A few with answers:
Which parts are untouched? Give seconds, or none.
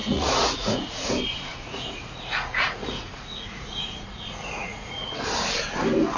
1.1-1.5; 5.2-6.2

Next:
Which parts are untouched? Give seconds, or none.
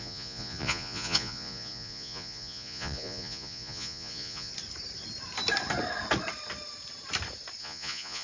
4.5-7.6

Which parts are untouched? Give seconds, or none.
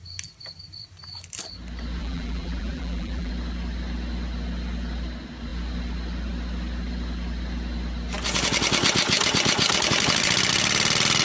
0.0-2.0; 3.3-11.2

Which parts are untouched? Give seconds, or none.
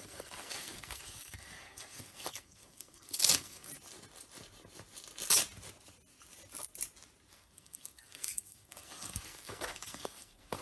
3.7-7.3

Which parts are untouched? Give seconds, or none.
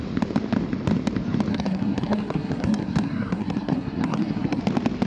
0.0-1.5; 4.6-5.1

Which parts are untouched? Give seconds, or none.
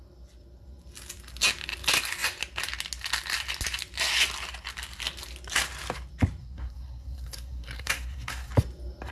0.0-6.4; 8.5-9.1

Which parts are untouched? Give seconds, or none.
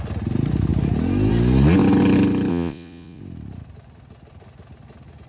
0.0-2.5; 3.2-5.3